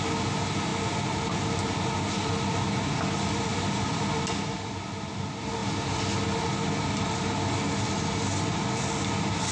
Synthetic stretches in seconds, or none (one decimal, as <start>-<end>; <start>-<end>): 3.5-4.1